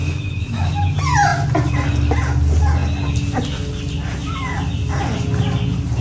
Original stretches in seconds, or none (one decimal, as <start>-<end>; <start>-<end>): 0.7-6.0